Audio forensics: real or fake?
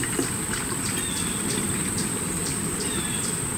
fake